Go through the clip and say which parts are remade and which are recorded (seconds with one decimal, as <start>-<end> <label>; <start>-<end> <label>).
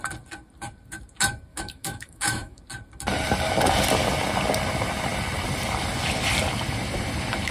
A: 0.0-1.5 recorded; 1.5-2.6 remade; 2.6-7.5 recorded